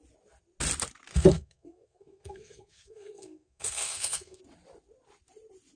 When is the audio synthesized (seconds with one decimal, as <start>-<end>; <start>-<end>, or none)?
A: 1.1-4.4